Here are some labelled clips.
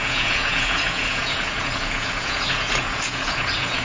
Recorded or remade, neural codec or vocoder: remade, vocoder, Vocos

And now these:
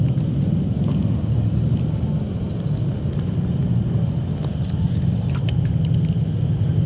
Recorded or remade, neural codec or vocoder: recorded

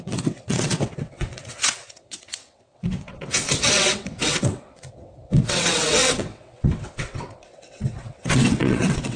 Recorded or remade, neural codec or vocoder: remade, vocoder, WaveNeXt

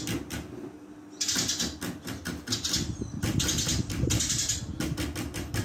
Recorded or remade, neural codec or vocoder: recorded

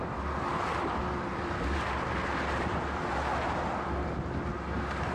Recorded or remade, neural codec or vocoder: recorded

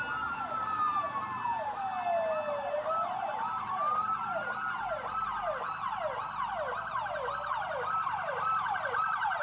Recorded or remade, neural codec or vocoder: recorded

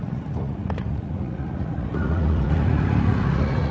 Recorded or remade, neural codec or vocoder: remade, vocoder, Vocos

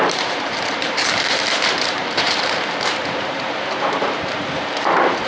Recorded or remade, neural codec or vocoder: remade, vocoder, BigVGAN v2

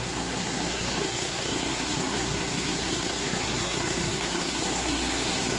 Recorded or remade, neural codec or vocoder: remade, codec, SNAC